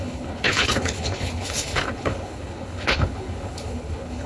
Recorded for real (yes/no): no